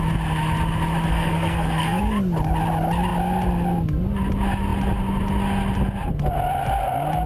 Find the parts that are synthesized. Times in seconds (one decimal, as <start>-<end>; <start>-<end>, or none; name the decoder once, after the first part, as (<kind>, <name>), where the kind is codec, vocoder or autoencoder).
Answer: 1.1-2.0 (codec, SNAC)